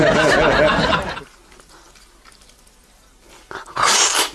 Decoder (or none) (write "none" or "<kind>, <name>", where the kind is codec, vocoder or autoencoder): none